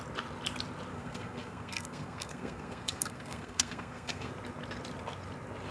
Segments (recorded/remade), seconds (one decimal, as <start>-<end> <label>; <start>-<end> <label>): 0.0-0.9 recorded; 0.9-4.3 remade; 4.3-5.7 recorded